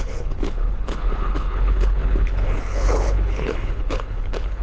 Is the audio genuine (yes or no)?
no